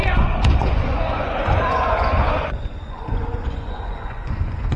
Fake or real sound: fake